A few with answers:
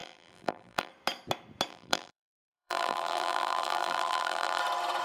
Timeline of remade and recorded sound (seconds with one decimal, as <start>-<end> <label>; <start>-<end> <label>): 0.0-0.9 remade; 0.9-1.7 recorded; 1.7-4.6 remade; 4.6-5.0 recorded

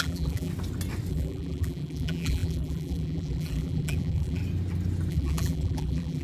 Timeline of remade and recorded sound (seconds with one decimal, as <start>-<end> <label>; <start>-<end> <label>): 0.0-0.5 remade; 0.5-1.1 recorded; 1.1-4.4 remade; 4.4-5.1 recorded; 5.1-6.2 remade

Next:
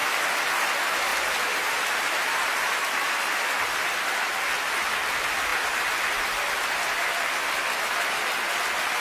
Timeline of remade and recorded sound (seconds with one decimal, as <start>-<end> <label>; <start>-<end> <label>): 0.0-1.1 recorded; 1.1-2.7 remade; 2.7-5.5 recorded; 5.5-8.6 remade; 8.6-9.0 recorded

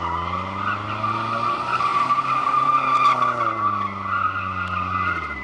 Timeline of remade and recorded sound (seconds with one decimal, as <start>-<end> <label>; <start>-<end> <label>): 0.0-1.9 recorded; 1.9-3.6 remade; 3.6-5.4 recorded

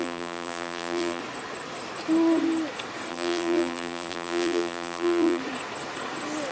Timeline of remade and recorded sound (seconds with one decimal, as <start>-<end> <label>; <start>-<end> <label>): 0.0-1.2 remade; 1.2-3.1 recorded; 3.1-5.4 remade; 5.4-6.5 recorded